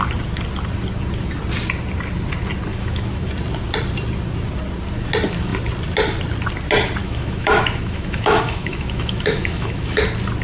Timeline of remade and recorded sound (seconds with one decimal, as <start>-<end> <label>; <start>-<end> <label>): 0.0-2.7 recorded; 2.7-3.3 remade; 3.3-7.0 recorded; 7.0-10.0 remade; 10.0-10.4 recorded